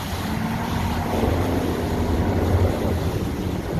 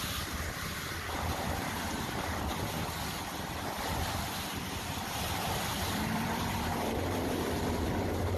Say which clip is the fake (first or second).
second